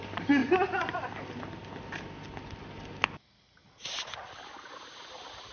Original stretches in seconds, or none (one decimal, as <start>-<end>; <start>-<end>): 0.0-0.4; 1.1-5.5